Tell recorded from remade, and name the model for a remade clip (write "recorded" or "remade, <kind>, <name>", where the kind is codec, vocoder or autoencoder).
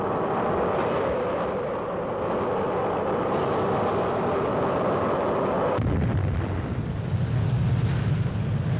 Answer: recorded